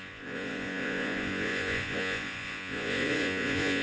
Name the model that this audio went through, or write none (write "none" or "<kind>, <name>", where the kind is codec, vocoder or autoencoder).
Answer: vocoder, Vocos